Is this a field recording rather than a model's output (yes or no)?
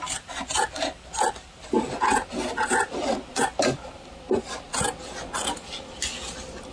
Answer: yes